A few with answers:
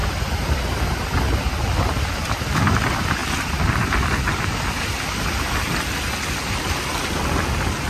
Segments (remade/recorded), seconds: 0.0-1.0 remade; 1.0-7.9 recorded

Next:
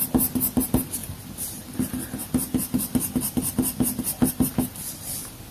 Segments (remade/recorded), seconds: 0.0-5.5 recorded

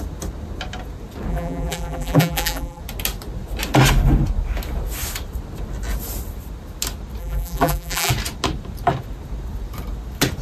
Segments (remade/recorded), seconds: 0.0-1.3 recorded; 1.3-2.8 remade; 2.8-7.2 recorded; 7.2-8.1 remade; 8.1-10.4 recorded

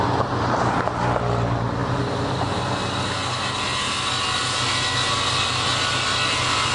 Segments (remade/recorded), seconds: 0.0-1.8 recorded; 1.8-2.6 remade; 2.6-6.7 recorded

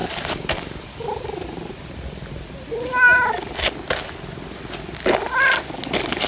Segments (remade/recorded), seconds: 0.0-1.8 remade; 1.8-6.3 recorded

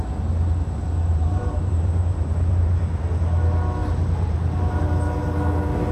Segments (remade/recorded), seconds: 0.0-1.1 recorded; 1.1-2.8 remade; 2.8-3.8 recorded; 3.8-4.8 remade; 4.8-5.9 recorded